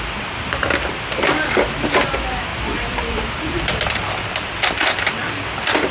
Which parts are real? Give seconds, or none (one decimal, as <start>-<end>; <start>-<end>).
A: 0.0-2.5; 5.3-5.9